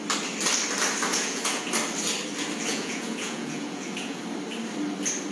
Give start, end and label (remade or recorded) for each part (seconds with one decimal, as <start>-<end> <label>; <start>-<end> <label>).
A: 0.0-1.1 recorded; 1.1-1.7 remade; 1.7-2.7 recorded; 2.7-4.2 remade; 4.2-5.3 recorded